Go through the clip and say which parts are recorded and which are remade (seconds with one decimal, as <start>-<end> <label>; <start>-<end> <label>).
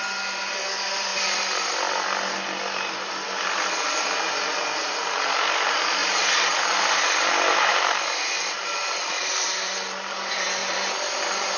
0.0-6.0 recorded; 6.0-7.3 remade; 7.3-7.7 recorded; 7.7-8.4 remade; 8.4-10.6 recorded; 10.6-11.2 remade; 11.2-11.6 recorded